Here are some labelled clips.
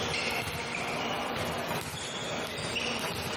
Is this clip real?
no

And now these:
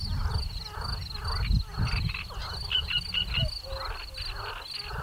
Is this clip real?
yes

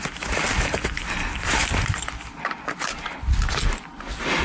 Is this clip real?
yes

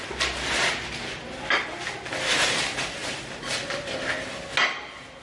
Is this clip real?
yes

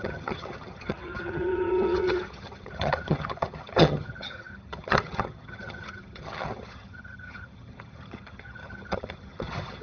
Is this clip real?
no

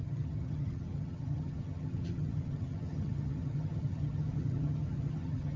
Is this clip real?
no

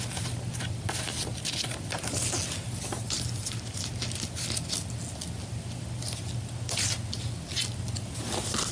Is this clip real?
yes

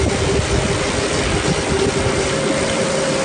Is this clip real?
yes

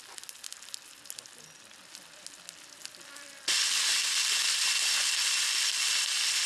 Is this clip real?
yes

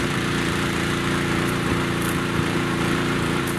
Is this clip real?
no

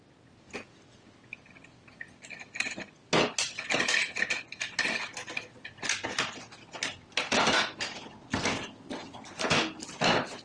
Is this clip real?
yes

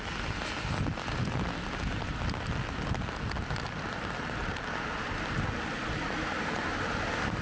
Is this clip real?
yes